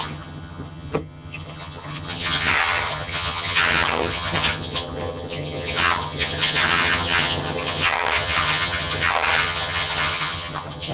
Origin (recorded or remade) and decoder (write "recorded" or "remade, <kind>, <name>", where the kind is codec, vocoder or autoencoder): remade, vocoder, HiFi-GAN